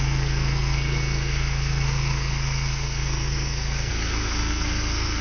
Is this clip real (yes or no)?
no